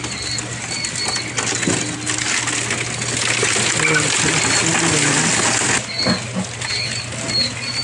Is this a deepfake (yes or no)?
no